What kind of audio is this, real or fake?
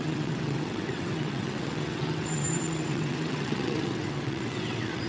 fake